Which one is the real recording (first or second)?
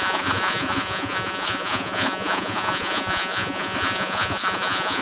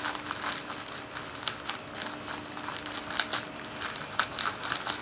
second